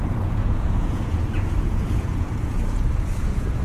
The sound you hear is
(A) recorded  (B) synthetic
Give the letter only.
B